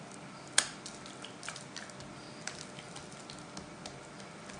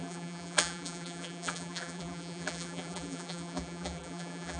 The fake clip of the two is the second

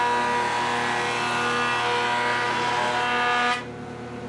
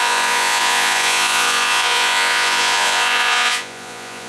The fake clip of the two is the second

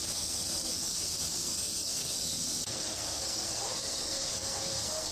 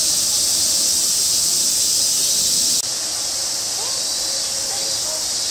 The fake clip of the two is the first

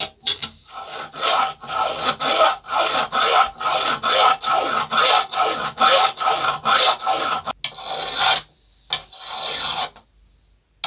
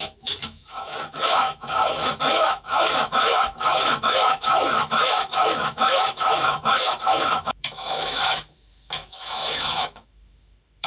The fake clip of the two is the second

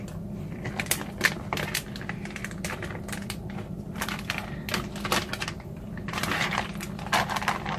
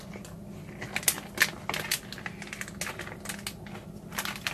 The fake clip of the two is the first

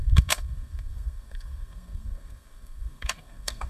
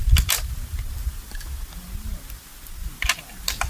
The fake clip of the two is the first